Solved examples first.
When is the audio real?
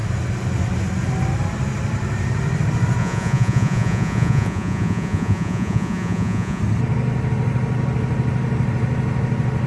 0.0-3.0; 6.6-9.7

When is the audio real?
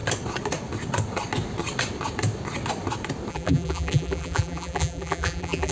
0.0-3.3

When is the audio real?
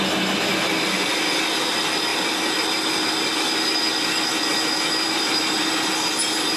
0.0-6.6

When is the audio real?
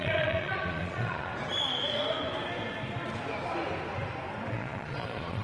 1.3-4.5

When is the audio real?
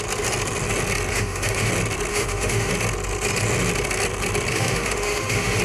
0.0-1.1; 1.7-2.1; 2.7-4.5